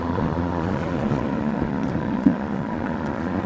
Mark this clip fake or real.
fake